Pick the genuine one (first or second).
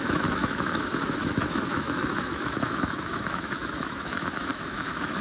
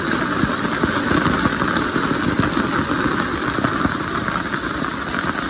second